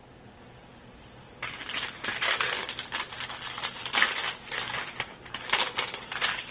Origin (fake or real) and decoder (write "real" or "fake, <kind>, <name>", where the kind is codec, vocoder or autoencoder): real